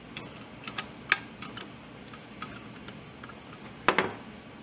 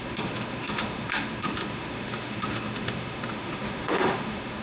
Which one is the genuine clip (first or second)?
first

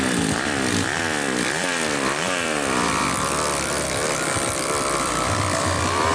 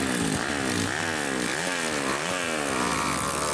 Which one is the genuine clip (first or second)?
second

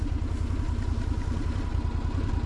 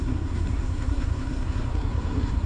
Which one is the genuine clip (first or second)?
first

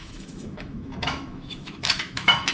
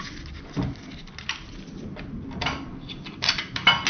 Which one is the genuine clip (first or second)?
second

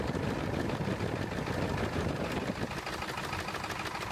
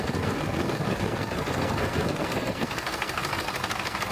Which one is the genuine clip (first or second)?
first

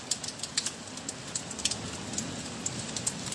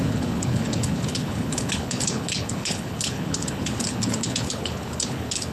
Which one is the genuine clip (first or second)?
first